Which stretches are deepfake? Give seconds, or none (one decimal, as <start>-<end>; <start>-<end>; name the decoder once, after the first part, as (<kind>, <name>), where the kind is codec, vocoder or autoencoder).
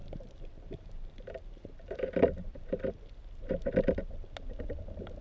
0.0-2.9 (vocoder, BigVGAN v2)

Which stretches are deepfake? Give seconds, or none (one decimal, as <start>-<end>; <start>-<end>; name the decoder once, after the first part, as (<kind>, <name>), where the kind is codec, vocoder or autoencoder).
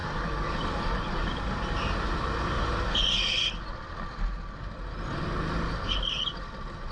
none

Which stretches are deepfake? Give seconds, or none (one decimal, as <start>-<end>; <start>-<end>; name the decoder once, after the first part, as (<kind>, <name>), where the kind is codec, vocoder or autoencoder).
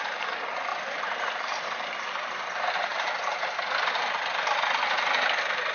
none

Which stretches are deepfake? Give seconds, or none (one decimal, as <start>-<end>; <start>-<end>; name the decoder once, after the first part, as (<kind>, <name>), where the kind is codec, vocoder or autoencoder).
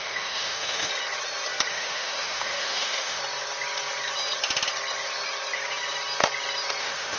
0.0-0.9 (autoencoder, DAC-VAE); 1.7-3.2; 6.8-7.2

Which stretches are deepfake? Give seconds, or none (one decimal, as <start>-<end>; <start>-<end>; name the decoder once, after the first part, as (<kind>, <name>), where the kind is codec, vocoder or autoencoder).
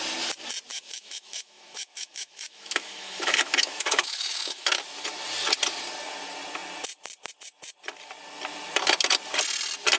0.7-4.8 (autoencoder, DAC-VAE)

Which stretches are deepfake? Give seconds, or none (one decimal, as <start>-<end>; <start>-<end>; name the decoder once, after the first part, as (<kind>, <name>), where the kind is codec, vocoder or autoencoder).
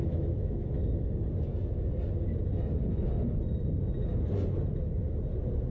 0.0-0.8 (autoencoder, DAC-VAE)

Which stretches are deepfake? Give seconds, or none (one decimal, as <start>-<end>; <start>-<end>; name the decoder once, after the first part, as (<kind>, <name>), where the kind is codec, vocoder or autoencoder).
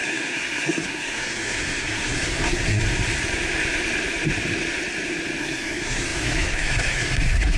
0.0-2.8 (codec, SNAC); 5.4-7.6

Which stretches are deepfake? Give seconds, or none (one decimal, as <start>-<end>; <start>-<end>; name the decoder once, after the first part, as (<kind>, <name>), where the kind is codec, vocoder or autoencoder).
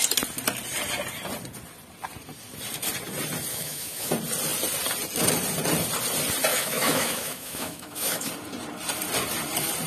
3.5-4.1 (autoencoder, DAC-VAE); 6.5-8.3